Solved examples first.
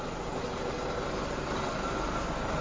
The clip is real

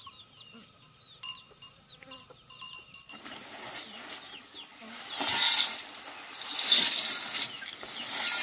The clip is real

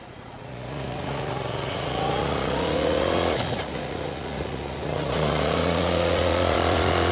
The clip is fake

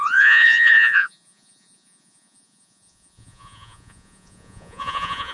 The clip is fake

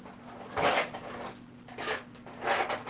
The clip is real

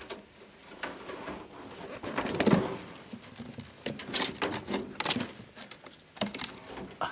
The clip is real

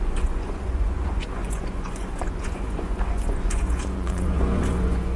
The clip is fake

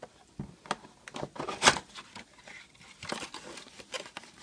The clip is real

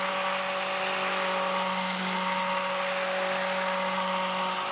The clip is real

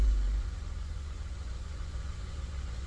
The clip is fake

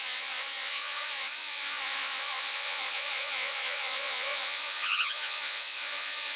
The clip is fake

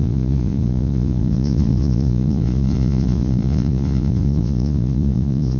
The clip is fake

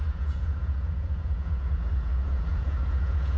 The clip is fake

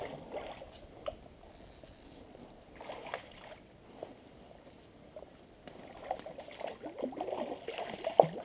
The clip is real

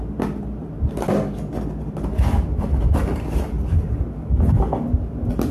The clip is real